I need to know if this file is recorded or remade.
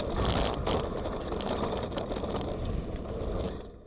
recorded